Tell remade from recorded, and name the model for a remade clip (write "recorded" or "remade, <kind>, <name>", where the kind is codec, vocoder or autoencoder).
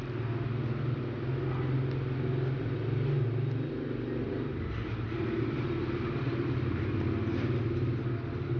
recorded